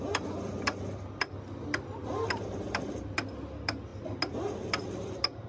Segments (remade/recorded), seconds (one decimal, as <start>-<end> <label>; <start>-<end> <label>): 0.0-5.5 recorded

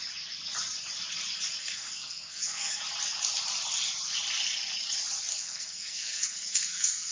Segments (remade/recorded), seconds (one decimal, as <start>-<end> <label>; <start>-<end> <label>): 0.0-1.6 recorded; 1.6-2.8 remade; 2.8-5.3 recorded; 5.3-7.1 remade

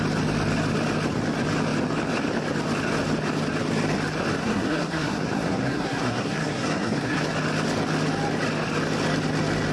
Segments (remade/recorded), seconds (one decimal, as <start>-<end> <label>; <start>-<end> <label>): 0.0-4.4 recorded; 4.4-7.2 remade; 7.2-9.7 recorded

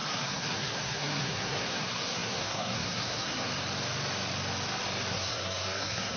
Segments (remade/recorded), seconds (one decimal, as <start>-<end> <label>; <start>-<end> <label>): 0.0-3.5 remade; 3.5-5.1 recorded; 5.1-6.2 remade

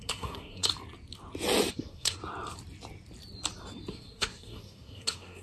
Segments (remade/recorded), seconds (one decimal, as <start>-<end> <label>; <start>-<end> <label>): 0.0-0.7 remade; 0.7-1.7 recorded; 1.7-2.2 remade; 2.2-3.9 recorded; 3.9-5.4 remade

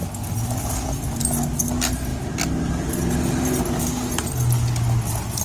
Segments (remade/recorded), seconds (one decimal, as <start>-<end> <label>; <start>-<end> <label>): 0.0-5.4 recorded

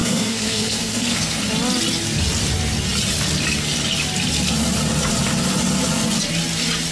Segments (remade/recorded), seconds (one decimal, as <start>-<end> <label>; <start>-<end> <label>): 0.0-1.4 remade; 1.4-6.9 recorded